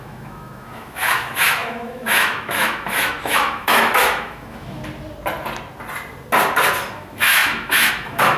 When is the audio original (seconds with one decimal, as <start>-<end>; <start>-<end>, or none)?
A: 4.8-6.9